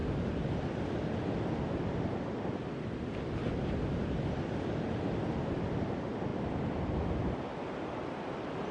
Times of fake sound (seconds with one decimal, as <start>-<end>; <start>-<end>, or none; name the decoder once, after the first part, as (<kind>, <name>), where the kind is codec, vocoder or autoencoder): 0.0-1.1 (vocoder, BigVGAN v2)